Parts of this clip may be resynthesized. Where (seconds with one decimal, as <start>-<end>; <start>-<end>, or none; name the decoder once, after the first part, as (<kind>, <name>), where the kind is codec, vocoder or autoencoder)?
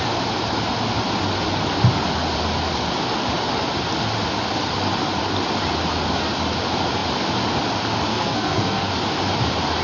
8.1-8.9 (codec, SNAC)